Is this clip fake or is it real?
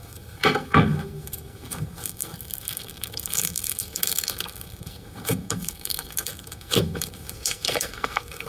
fake